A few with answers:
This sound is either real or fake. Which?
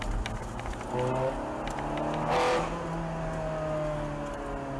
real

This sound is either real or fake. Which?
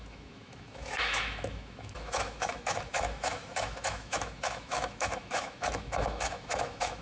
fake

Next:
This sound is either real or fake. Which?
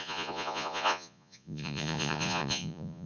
fake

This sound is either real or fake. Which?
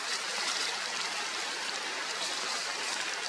real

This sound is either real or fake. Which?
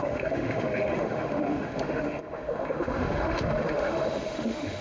fake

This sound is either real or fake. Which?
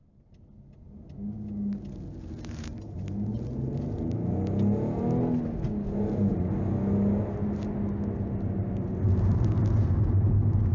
real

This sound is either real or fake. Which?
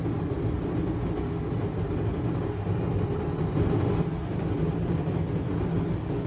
real